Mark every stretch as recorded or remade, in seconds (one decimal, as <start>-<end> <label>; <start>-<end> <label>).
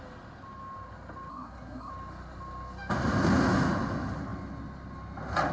0.0-1.3 recorded; 1.3-1.9 remade; 1.9-5.5 recorded